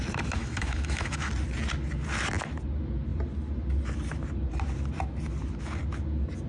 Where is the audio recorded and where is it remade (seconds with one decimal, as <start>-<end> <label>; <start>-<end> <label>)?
0.0-0.4 recorded; 0.4-1.3 remade; 1.3-6.5 recorded